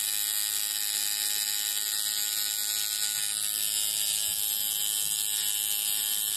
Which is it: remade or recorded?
recorded